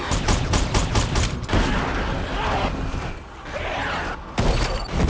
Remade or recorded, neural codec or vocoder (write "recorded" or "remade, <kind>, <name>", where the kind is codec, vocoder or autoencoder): recorded